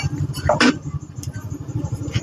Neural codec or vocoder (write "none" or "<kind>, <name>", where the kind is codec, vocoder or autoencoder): none